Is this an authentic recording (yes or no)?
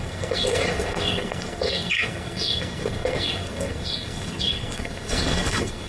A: no